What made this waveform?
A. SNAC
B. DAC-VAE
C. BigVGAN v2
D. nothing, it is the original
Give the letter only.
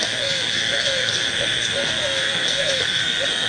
A